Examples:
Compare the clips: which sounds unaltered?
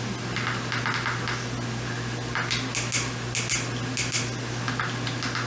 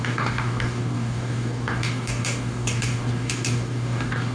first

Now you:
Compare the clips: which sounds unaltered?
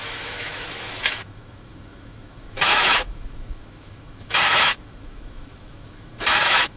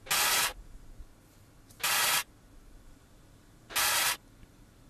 second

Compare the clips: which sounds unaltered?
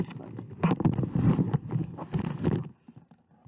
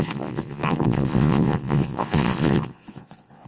first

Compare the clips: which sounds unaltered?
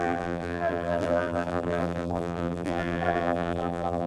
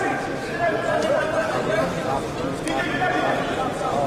second